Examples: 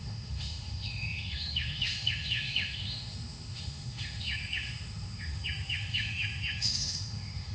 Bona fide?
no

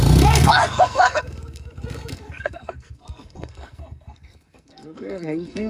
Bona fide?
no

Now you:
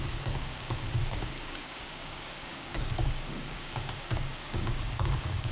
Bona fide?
no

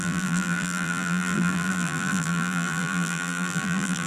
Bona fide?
no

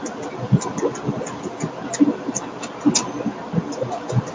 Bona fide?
yes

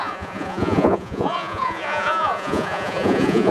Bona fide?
no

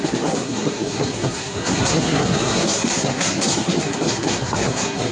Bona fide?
no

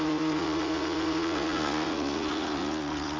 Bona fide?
no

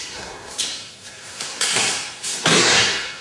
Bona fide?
no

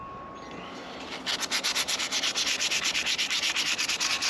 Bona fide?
yes